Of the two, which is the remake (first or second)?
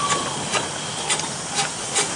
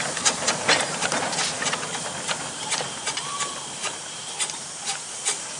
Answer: second